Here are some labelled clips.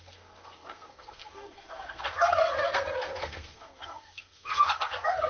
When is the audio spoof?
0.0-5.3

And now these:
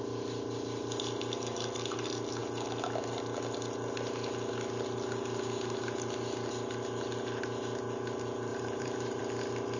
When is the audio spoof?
8.5-9.2

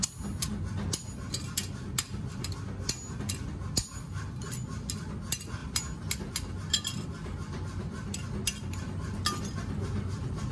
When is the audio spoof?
none

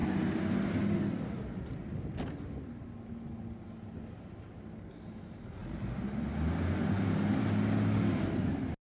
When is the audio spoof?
none

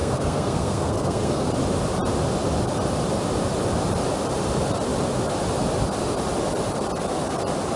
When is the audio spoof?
0.0-1.5

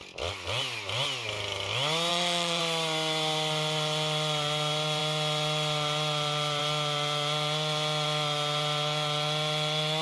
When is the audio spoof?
2.1-2.6

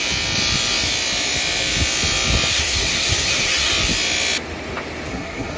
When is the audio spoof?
2.5-3.7; 5.1-5.6

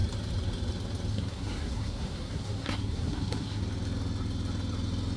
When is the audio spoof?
1.1-3.6